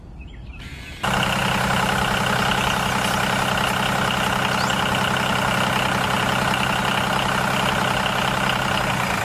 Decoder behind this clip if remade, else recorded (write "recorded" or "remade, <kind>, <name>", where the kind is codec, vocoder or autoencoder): recorded